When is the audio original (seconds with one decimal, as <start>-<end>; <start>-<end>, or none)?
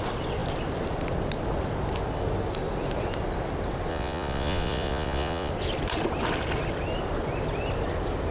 0.0-3.9; 5.5-8.3